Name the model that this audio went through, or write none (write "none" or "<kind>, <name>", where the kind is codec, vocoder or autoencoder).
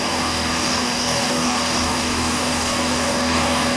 codec, DAC